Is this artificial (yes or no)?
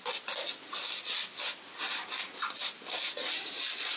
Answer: no